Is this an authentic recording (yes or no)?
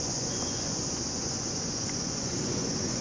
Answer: no